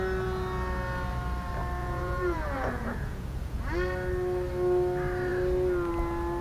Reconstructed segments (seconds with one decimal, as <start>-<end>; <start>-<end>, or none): 1.8-3.6